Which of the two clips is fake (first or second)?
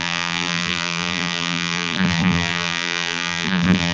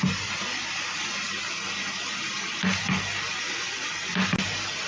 first